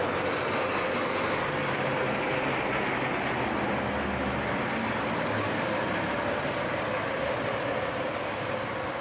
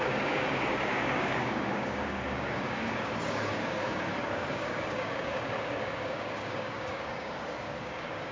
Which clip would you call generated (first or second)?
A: second